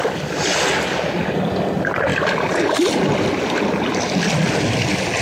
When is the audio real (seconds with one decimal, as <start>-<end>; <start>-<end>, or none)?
0.0-2.1; 3.6-5.2